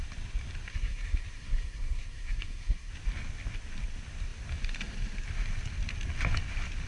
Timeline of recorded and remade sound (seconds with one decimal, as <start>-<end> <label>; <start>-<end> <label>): 0.0-0.7 recorded; 0.7-2.9 remade; 2.9-6.9 recorded